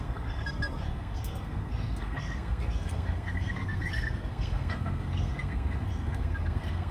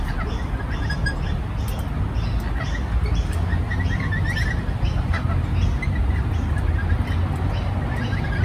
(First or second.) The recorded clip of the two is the second